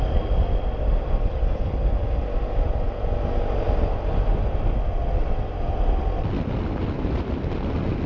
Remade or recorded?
recorded